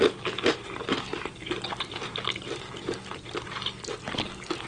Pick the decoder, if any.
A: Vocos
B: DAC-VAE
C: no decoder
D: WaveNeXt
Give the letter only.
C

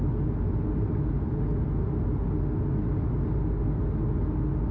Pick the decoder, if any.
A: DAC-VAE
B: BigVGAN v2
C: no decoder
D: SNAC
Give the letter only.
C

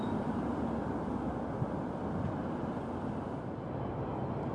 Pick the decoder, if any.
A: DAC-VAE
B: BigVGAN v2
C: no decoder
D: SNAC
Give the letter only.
C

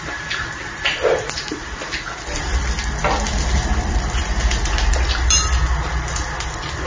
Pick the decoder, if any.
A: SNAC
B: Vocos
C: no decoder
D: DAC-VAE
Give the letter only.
C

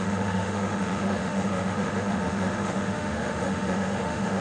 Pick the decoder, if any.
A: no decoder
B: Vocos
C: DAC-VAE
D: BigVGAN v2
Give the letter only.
C